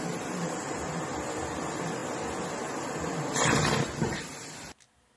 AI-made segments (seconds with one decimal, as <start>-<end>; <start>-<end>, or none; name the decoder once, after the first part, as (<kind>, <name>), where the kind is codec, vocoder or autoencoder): none